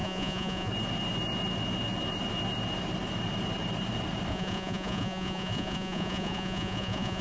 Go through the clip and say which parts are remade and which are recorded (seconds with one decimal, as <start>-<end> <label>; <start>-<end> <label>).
0.0-0.7 remade; 0.7-4.3 recorded; 4.3-7.2 remade